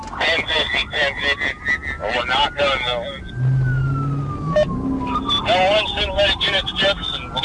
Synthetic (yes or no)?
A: no